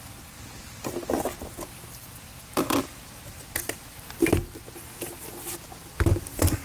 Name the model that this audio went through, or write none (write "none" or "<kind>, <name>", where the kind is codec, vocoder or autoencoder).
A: none